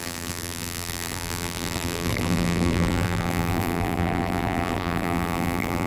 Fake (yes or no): yes